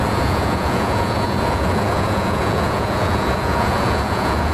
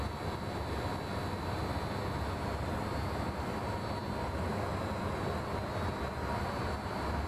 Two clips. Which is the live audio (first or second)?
second